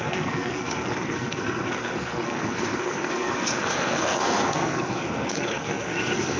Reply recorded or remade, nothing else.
remade